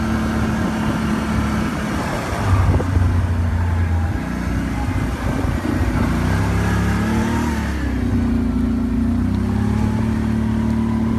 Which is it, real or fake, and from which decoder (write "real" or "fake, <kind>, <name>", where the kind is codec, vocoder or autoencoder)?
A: real